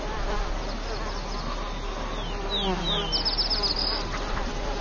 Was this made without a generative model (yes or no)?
yes